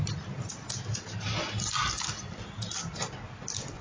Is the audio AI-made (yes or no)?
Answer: no